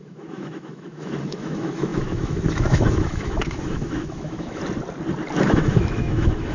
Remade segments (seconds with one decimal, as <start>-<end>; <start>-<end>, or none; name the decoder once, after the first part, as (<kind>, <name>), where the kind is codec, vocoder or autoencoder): 0.0-4.6 (autoencoder, DAC-VAE); 5.4-6.5